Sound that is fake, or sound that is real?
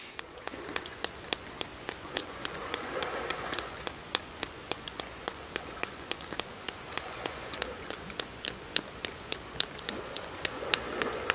fake